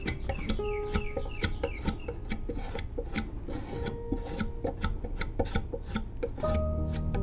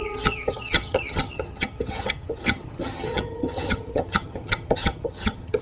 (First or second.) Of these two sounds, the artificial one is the second